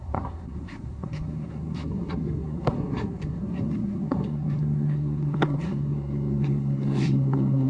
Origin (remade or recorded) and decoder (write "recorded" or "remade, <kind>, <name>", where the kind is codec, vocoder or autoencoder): remade, codec, SNAC